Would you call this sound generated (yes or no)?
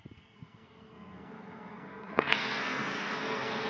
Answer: yes